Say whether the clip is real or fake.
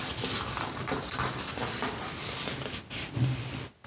real